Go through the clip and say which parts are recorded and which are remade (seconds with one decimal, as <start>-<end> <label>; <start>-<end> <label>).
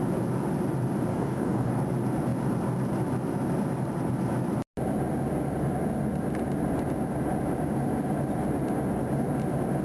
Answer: 0.0-1.1 recorded; 1.1-1.7 remade; 1.7-9.8 recorded